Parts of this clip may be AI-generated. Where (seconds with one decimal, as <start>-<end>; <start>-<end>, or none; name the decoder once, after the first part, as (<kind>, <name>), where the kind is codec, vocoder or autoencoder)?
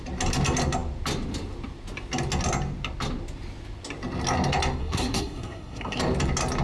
4.8-6.0 (codec, SNAC)